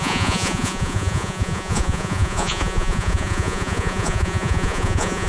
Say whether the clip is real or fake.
fake